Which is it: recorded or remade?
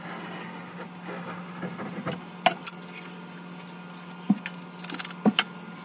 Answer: recorded